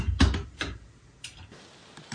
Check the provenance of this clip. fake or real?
real